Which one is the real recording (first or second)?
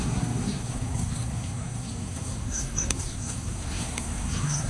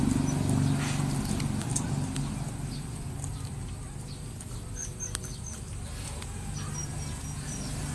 second